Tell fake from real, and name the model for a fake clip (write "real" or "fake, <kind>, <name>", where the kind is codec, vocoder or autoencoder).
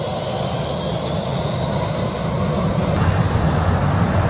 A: real